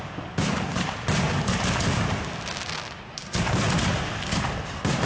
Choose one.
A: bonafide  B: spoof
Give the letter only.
A